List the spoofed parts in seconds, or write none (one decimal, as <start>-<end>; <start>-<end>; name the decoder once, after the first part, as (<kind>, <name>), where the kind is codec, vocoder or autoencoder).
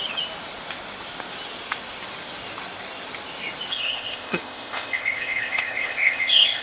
3.7-6.6 (codec, ZipCodec)